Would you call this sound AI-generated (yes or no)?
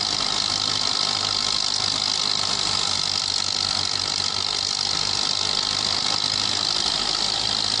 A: no